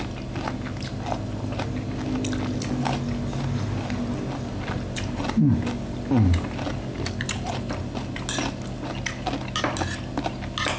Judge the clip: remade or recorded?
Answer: recorded